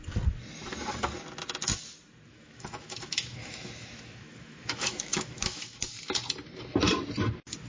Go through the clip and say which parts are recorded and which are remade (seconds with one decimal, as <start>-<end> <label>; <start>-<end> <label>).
0.0-2.3 recorded; 2.3-5.8 remade; 5.8-7.7 recorded